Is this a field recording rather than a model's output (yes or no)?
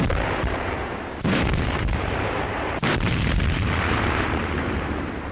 no